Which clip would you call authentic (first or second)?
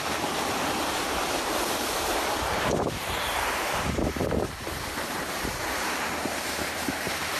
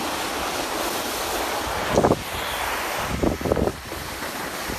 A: second